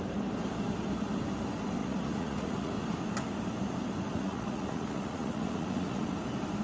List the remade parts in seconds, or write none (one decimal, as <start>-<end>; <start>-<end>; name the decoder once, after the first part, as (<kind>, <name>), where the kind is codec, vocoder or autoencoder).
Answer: 1.8-2.7 (vocoder, Vocos); 4.1-6.1